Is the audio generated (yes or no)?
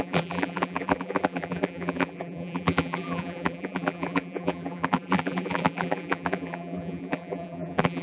yes